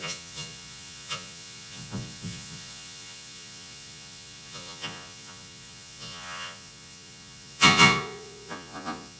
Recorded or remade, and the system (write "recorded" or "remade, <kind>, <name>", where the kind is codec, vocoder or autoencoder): remade, vocoder, Vocos